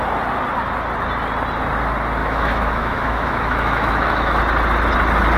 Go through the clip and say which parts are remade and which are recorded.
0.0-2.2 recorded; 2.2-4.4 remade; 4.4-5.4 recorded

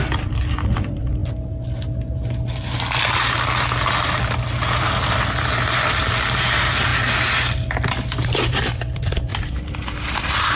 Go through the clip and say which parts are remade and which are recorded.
0.0-10.6 recorded

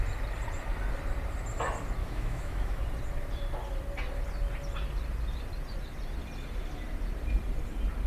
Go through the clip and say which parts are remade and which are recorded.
0.0-2.0 recorded; 2.0-2.8 remade; 2.8-8.1 recorded

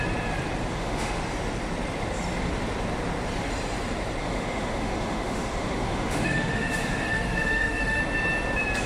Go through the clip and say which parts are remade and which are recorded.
0.0-0.7 recorded; 0.7-1.2 remade; 1.2-4.2 recorded; 4.2-8.0 remade; 8.0-8.9 recorded

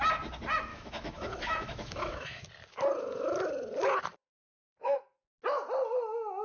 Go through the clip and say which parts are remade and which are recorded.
0.0-0.7 recorded; 0.7-2.5 remade; 2.5-6.4 recorded